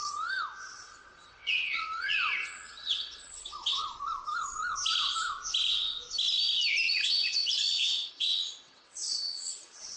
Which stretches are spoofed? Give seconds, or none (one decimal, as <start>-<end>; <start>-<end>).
0.0-3.8; 6.9-10.0